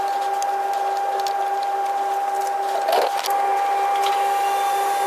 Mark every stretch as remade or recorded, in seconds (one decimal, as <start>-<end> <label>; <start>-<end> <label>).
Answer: 0.0-5.1 recorded